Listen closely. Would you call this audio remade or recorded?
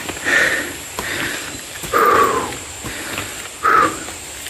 recorded